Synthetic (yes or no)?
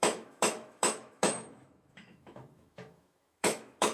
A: yes